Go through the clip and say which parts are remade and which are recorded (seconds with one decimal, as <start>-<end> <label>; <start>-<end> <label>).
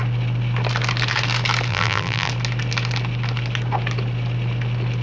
0.0-1.7 recorded; 1.7-2.3 remade; 2.3-5.0 recorded